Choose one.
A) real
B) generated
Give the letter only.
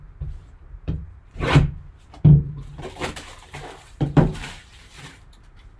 B